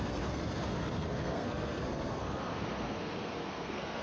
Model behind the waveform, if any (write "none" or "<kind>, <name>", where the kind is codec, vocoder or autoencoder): codec, SNAC